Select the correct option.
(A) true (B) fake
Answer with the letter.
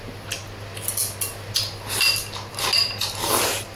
A